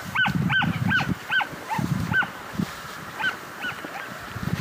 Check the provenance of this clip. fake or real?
fake